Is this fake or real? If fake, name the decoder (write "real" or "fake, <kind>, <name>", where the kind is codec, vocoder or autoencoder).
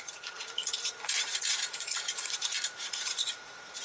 fake, vocoder, Vocos